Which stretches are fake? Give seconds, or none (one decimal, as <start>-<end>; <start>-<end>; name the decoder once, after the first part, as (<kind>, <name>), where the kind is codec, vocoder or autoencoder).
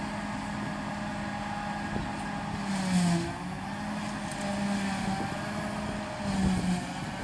none